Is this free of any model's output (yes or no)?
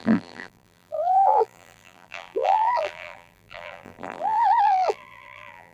no